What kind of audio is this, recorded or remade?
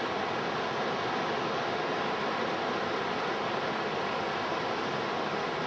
recorded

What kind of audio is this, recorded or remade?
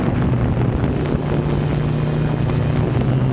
recorded